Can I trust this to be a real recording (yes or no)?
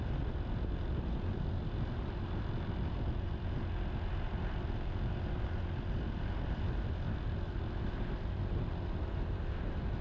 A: yes